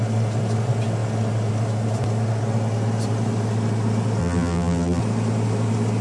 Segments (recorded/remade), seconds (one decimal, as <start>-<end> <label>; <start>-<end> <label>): 0.0-4.2 recorded; 4.2-5.0 remade; 5.0-6.0 recorded